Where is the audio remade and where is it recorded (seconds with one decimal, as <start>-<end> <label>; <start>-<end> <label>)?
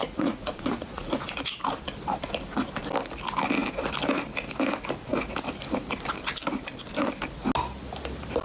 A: 0.0-1.1 remade; 1.1-8.4 recorded